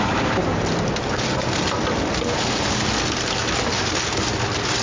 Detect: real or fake real